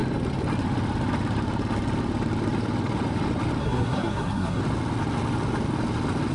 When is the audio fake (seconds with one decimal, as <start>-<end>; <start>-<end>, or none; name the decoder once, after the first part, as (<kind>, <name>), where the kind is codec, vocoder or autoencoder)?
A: 3.6-4.6 (codec, SNAC)